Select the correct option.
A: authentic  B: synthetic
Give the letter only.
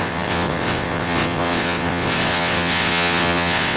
B